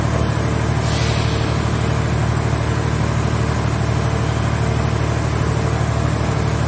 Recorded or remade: recorded